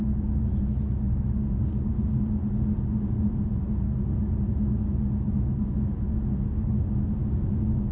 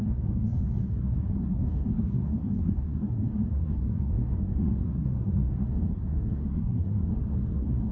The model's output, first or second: second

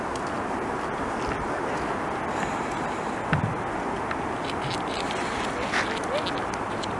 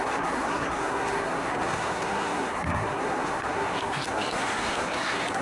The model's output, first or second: second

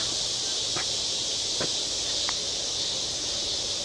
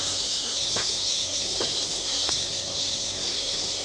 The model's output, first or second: second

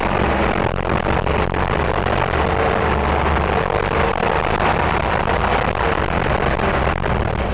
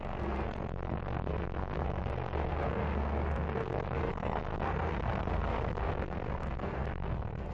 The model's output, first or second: second